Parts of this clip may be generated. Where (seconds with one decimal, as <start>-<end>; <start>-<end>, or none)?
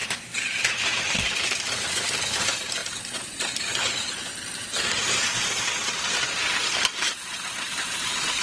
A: 0.0-8.4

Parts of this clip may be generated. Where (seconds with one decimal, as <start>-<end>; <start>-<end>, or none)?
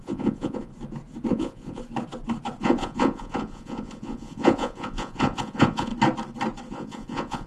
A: 0.0-0.7; 1.3-1.8; 2.6-5.9; 6.7-7.5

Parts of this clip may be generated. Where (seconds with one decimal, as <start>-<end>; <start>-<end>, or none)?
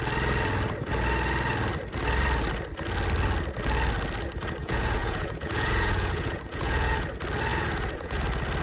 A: 4.6-7.1; 7.5-8.2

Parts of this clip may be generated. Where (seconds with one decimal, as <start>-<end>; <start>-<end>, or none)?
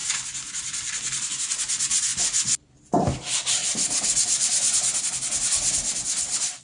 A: none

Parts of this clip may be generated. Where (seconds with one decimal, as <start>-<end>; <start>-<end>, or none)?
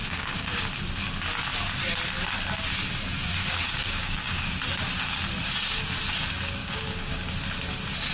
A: 0.0-0.6; 3.4-4.6; 6.6-7.3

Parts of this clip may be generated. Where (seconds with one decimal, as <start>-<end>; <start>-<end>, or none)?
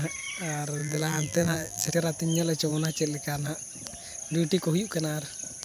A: 0.8-1.9